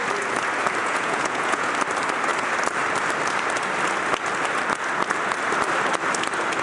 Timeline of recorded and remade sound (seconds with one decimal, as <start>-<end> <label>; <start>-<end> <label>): 0.0-0.8 recorded; 0.8-1.7 remade; 1.7-6.6 recorded